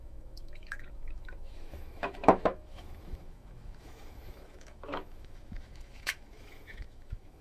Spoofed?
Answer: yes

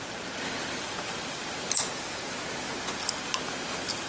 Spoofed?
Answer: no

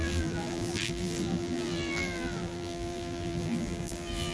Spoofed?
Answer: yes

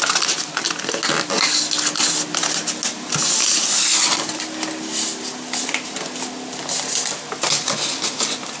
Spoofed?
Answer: no